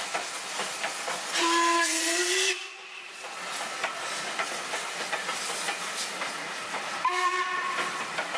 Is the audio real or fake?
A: real